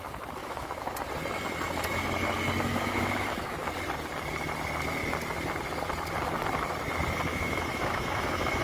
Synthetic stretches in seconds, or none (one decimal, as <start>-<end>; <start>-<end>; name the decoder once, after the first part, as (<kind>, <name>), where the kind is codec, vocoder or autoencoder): 0.4-0.9 (autoencoder, DAC-VAE); 2.7-3.7; 7.3-8.6